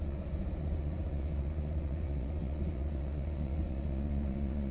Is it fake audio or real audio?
fake